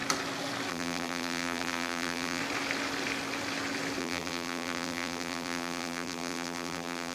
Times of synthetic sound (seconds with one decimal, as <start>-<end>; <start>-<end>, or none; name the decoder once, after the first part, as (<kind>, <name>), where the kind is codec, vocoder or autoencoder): 0.7-2.4 (vocoder, BigVGAN v2); 4.0-7.1